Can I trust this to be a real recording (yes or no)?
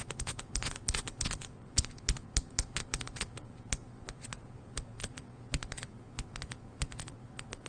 no